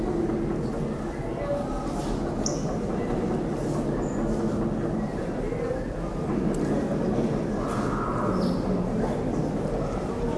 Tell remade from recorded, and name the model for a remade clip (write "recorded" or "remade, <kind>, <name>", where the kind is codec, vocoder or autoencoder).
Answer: recorded